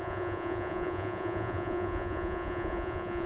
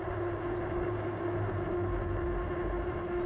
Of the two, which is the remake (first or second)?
first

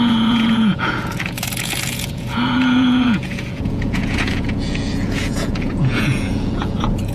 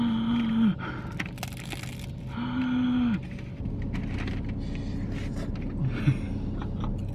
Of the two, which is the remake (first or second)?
first